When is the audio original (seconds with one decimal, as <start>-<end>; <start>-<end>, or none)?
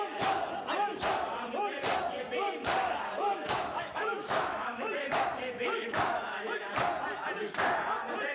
0.0-3.3; 4.9-5.6; 6.5-8.3